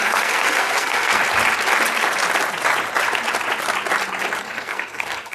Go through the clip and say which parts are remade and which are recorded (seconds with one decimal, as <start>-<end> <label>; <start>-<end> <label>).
0.0-1.2 remade; 1.2-4.4 recorded; 4.4-5.3 remade